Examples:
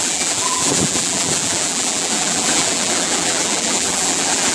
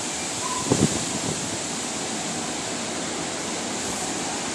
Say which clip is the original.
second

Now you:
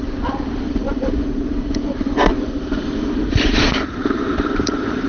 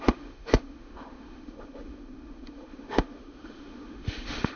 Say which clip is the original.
first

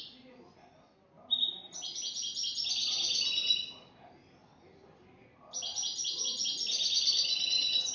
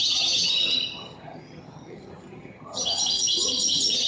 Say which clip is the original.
first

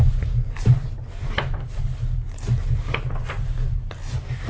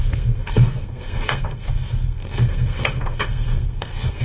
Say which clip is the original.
first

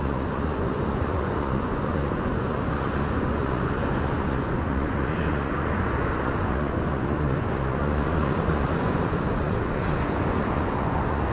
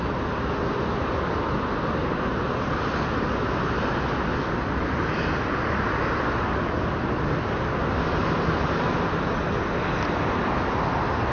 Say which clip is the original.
second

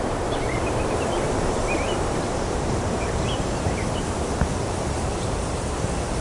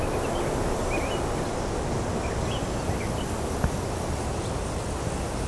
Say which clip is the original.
second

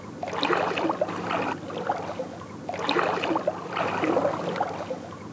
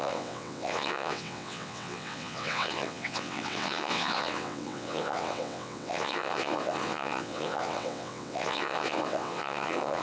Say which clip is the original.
first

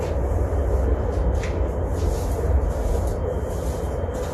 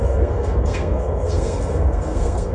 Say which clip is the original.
first